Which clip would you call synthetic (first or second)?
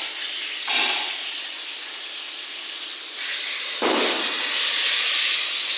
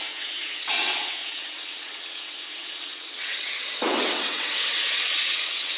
second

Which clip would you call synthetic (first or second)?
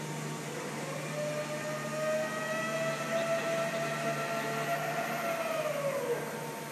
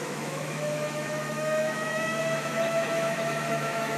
second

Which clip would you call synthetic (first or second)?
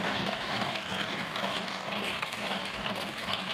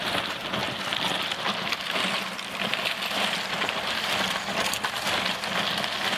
first